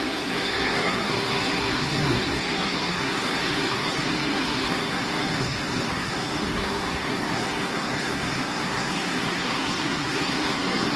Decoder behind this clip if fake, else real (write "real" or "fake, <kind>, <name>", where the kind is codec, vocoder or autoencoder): fake, codec, SNAC